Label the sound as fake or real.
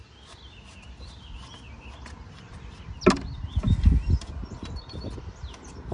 real